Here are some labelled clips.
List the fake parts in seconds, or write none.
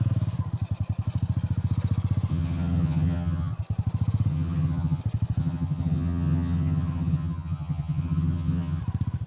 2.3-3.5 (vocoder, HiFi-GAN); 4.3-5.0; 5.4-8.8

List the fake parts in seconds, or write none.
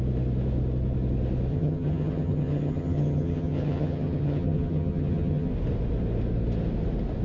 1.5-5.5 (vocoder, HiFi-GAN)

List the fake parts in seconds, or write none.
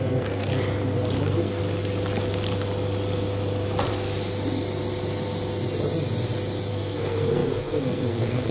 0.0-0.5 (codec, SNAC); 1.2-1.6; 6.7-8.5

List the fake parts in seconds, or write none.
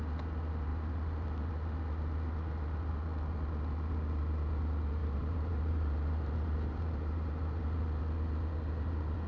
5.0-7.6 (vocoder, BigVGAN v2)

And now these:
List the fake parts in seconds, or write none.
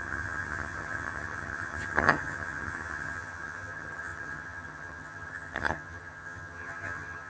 0.0-7.3 (vocoder, HiFi-GAN)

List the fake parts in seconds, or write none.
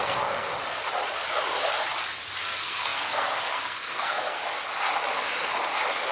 0.0-0.5 (codec, SNAC); 2.4-4.4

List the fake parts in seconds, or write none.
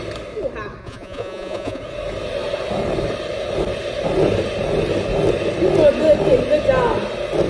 0.8-1.8 (vocoder, Vocos)